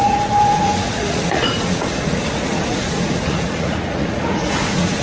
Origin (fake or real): fake